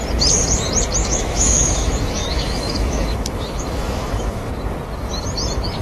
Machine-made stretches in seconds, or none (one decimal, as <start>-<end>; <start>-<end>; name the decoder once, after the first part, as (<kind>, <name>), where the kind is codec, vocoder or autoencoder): 1.0-4.5 (autoencoder, DAC-VAE)

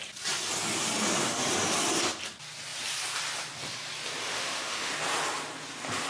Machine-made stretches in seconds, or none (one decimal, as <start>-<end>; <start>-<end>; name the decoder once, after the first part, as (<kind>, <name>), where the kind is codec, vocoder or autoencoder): 4.2-4.9 (autoencoder, DAC-VAE)

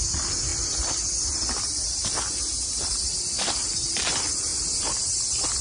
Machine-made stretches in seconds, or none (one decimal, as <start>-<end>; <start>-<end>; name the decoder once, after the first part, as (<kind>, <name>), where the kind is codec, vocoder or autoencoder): none

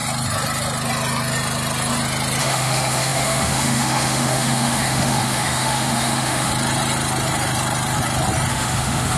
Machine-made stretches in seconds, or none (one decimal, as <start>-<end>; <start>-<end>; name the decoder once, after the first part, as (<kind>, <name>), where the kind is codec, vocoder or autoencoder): 2.4-6.5 (autoencoder, DAC-VAE); 8.5-9.2

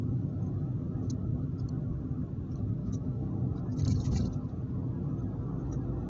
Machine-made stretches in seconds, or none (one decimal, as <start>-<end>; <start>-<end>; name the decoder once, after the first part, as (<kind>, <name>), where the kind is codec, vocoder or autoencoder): 2.8-3.3 (autoencoder, DAC-VAE)

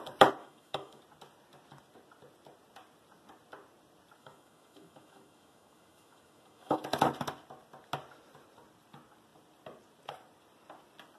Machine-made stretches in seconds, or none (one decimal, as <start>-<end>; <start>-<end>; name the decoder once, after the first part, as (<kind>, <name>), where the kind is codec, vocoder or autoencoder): 0.4-1.0 (autoencoder, DAC-VAE); 4.2-6.8